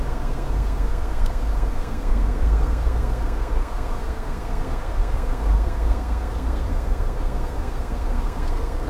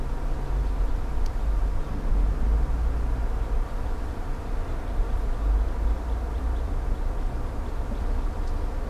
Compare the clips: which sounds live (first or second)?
second